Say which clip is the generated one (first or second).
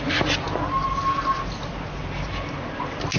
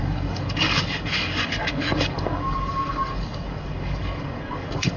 second